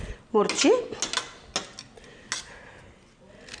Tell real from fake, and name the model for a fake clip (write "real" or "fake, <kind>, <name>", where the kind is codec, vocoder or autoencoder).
real